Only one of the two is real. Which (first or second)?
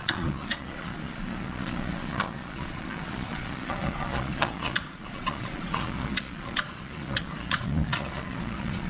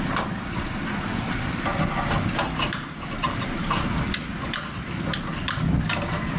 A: second